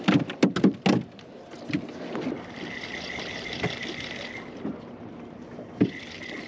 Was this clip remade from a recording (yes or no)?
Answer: no